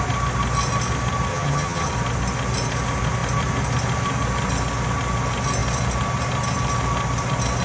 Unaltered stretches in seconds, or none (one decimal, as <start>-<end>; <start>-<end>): 0.0-1.3; 1.9-7.6